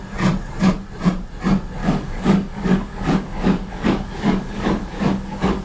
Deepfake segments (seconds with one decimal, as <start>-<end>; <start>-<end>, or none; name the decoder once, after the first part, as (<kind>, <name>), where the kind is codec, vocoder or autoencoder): 1.8-5.6 (codec, DAC)